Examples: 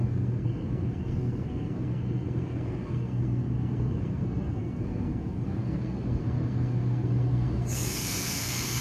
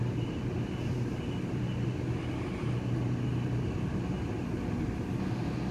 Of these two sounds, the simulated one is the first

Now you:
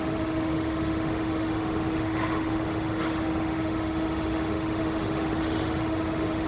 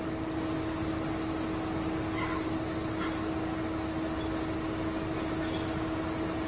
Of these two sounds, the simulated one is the first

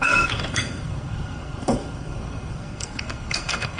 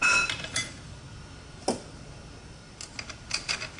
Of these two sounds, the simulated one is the first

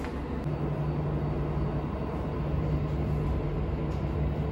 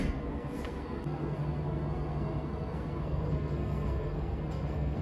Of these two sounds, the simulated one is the second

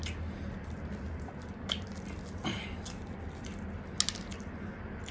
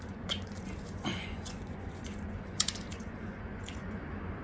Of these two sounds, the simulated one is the second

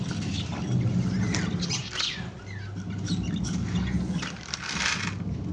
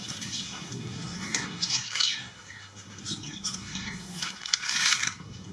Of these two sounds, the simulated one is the second